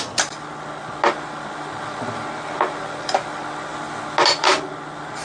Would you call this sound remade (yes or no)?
no